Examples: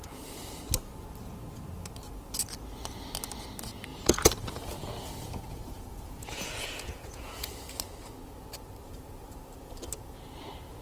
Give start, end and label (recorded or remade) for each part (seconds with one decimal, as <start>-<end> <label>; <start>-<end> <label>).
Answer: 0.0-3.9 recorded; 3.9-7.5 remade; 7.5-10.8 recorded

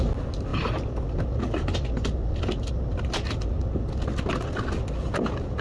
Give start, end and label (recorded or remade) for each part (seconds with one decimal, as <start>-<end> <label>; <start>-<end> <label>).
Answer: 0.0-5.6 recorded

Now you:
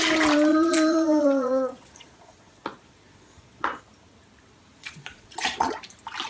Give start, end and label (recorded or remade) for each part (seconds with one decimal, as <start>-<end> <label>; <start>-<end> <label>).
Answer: 0.0-0.5 recorded; 0.5-3.8 remade; 3.8-4.8 recorded; 4.8-5.8 remade; 5.8-6.3 recorded